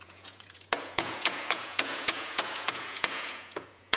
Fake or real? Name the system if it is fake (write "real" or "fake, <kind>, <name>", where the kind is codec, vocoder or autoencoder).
fake, vocoder, Vocos